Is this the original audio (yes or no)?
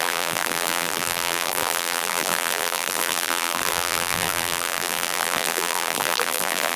no